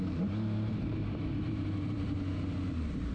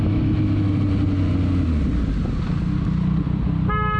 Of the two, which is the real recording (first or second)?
second